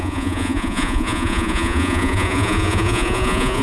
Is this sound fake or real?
fake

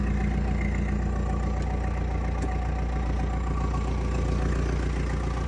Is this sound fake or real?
real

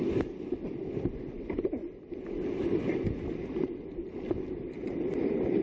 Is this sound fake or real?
real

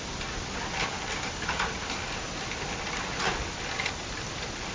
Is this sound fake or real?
real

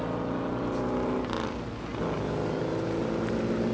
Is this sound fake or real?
real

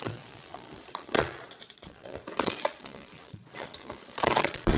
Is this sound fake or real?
fake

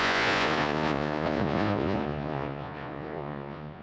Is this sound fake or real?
fake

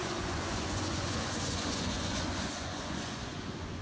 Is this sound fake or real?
fake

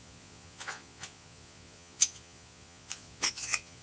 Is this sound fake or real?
fake